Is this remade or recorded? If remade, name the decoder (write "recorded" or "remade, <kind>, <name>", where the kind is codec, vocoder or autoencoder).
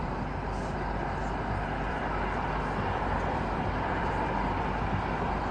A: remade, vocoder, BigVGAN v2